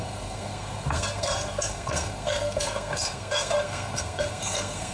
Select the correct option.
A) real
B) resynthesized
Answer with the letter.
B